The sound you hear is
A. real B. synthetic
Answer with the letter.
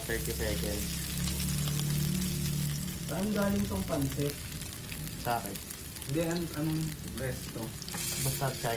A